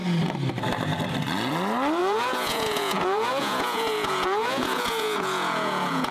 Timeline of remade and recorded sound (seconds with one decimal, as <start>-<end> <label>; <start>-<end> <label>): 0.0-2.0 recorded; 2.0-6.1 remade